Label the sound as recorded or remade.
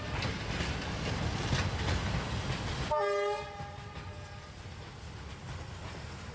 recorded